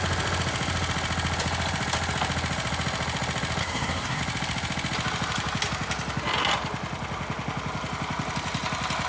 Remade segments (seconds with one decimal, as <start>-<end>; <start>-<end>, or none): 3.6-4.2